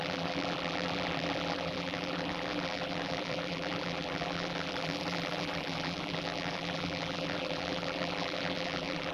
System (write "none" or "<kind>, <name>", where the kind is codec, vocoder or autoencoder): vocoder, BigVGAN v2